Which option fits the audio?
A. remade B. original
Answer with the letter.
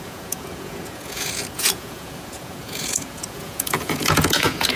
A